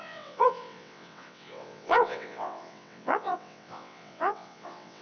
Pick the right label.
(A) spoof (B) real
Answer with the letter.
A